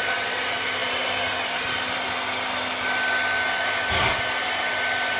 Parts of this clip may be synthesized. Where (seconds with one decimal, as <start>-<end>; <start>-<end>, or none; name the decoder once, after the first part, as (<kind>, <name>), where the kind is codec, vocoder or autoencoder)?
none